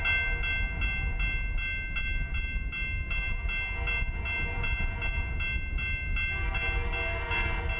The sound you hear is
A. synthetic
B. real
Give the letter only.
B